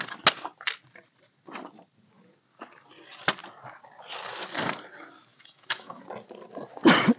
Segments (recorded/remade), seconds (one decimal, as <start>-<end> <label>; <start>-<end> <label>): 0.0-5.3 recorded; 5.3-6.0 remade; 6.0-7.2 recorded